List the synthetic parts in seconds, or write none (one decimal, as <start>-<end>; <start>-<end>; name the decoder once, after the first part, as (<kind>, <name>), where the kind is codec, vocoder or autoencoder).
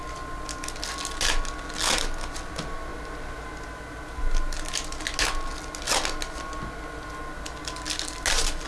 none